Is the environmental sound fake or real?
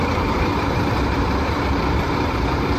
fake